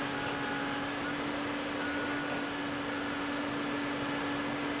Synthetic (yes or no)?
no